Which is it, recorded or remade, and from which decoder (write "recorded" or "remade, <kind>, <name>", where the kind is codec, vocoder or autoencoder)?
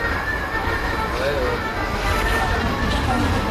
recorded